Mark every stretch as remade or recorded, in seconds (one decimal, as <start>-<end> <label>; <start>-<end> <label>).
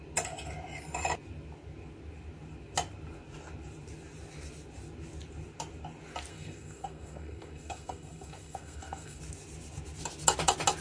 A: 0.0-6.3 recorded; 6.3-9.2 remade; 9.2-10.8 recorded